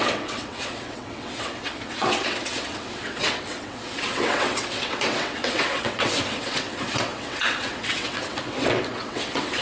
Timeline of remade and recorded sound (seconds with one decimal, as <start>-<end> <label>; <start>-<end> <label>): 0.0-9.6 remade